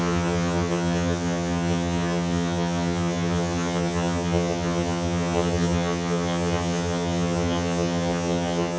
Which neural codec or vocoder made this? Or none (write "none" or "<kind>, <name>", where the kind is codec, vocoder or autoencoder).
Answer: vocoder, HiFi-GAN